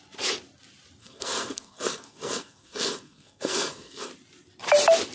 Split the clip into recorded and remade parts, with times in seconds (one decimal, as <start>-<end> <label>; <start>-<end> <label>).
0.0-1.0 recorded; 1.0-4.1 remade; 4.1-5.1 recorded